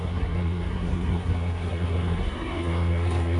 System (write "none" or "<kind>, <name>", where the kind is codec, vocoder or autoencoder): codec, SNAC